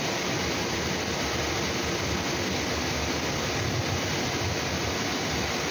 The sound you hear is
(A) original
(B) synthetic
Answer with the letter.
A